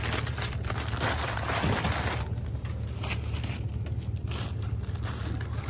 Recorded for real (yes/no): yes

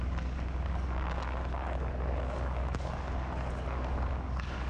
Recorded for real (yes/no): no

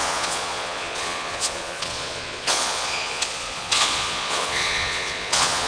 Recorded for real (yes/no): no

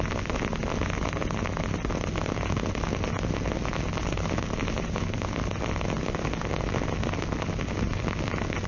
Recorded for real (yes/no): yes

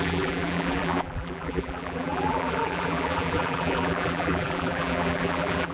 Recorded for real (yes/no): no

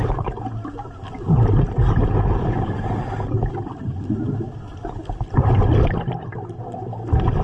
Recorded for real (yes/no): yes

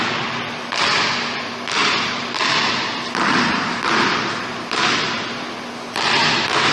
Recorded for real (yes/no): yes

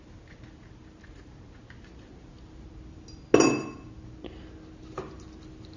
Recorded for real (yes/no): yes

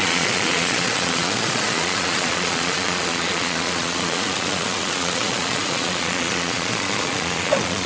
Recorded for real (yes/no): no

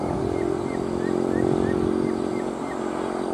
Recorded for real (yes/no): yes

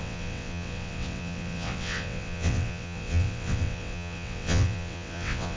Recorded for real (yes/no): no